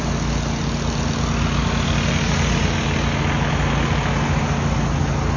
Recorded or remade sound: recorded